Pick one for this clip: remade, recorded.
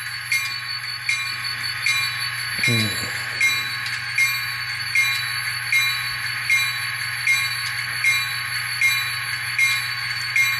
recorded